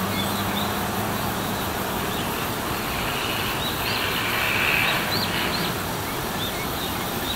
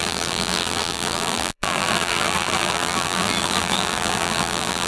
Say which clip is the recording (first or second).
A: first